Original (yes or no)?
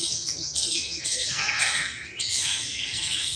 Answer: no